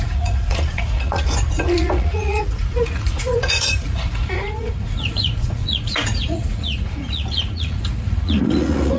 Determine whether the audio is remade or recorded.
remade